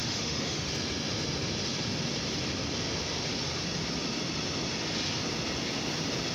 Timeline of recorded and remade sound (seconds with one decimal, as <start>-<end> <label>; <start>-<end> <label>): 0.0-0.7 remade; 0.7-6.3 recorded